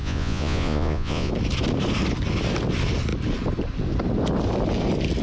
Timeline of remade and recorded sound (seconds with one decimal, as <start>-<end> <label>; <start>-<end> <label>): 0.0-1.3 remade; 1.3-5.2 recorded